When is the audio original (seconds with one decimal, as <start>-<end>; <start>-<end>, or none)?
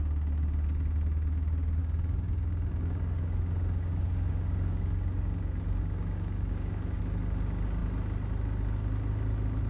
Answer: 0.0-1.8; 7.0-9.7